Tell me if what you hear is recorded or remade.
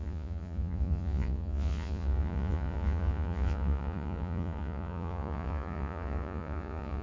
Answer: remade